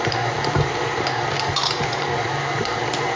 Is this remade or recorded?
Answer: remade